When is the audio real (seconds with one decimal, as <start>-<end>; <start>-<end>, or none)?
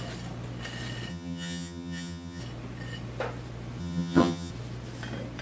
0.0-1.1; 2.4-3.8; 4.5-5.4